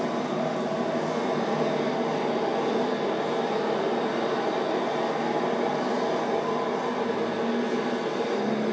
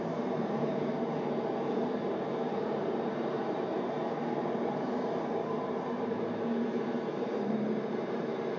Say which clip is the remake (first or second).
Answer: second